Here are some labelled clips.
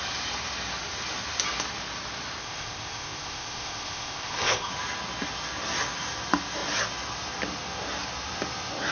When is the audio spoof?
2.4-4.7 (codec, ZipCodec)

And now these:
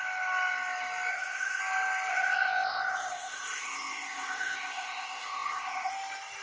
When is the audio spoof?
1.1-1.6 (codec, ZipCodec); 2.1-5.9

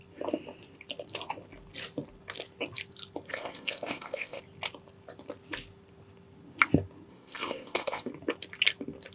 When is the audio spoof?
3.3-4.4 (codec, ZipCodec); 7.1-8.1